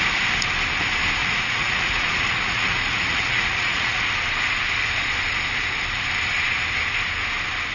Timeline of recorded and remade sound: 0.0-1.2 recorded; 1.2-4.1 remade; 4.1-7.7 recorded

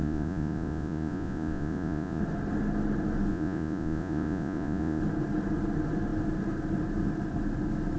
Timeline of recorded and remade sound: 0.0-2.2 remade; 2.2-3.3 recorded; 3.3-5.0 remade; 5.0-8.0 recorded